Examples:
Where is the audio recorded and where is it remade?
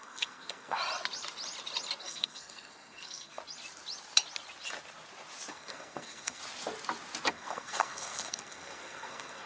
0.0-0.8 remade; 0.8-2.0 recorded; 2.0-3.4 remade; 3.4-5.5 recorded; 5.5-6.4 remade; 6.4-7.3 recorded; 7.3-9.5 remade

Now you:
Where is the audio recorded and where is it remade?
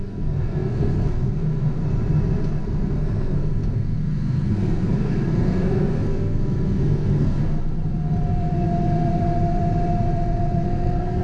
0.0-1.8 remade; 1.8-2.6 recorded; 2.6-7.4 remade; 7.4-10.6 recorded; 10.6-11.2 remade